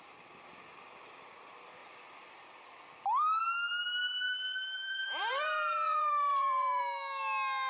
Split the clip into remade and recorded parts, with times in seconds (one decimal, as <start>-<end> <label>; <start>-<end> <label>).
0.0-1.8 recorded; 1.8-3.4 remade; 3.4-4.0 recorded; 4.0-6.8 remade; 6.8-7.7 recorded